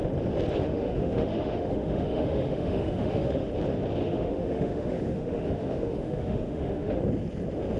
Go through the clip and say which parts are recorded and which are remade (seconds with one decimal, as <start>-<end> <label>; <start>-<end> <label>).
0.0-0.6 recorded; 0.6-3.5 remade; 3.5-4.0 recorded; 4.0-7.0 remade; 7.0-7.8 recorded